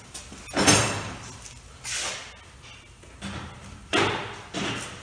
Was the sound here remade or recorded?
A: recorded